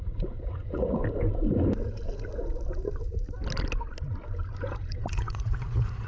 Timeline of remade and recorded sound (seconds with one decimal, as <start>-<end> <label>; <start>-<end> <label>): 0.0-1.0 remade; 1.0-4.7 recorded; 4.7-6.1 remade